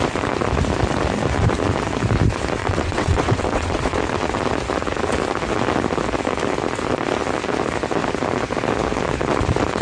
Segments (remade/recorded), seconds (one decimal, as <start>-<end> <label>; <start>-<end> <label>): 0.0-2.6 recorded; 2.6-4.0 remade; 4.0-9.8 recorded